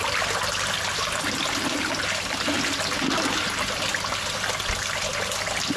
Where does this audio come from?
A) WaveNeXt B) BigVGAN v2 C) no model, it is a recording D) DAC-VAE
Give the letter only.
C